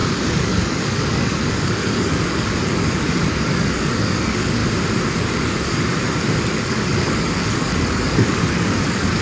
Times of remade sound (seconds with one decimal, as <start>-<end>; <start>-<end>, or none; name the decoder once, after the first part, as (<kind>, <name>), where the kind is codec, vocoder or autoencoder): 0.0-4.6 (codec, DAC); 5.2-5.9; 6.5-9.2